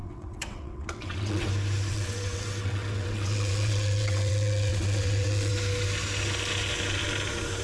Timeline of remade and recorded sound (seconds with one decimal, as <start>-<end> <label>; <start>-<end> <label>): 0.0-1.5 remade; 1.5-1.9 recorded; 1.9-5.5 remade; 5.5-7.6 recorded